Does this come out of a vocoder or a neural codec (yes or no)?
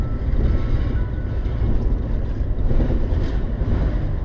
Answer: no